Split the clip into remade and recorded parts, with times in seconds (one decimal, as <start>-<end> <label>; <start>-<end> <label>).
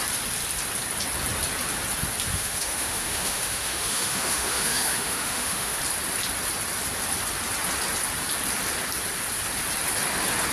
0.0-2.3 recorded; 2.3-5.8 remade; 5.8-10.5 recorded